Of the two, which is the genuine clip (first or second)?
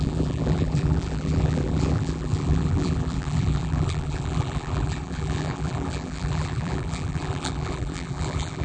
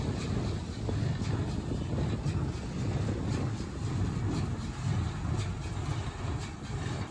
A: second